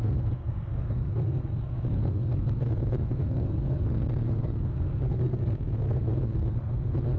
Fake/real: fake